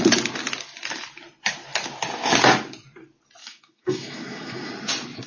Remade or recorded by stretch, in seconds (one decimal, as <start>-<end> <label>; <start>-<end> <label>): 0.0-3.4 recorded; 3.4-4.7 remade; 4.7-5.3 recorded